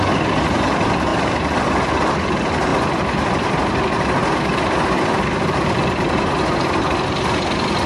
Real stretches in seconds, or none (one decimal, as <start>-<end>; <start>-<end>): 0.0-1.1; 1.6-2.7; 3.4-4.2